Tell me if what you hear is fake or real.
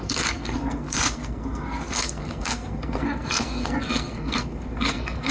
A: fake